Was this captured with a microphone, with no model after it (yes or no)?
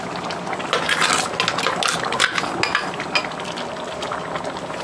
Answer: yes